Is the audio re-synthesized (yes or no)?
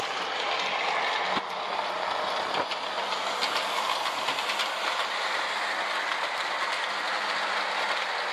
no